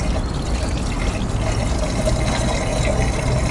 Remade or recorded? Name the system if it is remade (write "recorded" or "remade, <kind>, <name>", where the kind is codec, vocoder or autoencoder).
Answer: recorded